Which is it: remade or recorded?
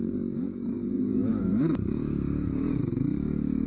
remade